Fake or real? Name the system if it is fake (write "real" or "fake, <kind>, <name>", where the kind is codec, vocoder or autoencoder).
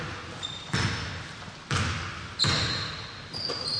real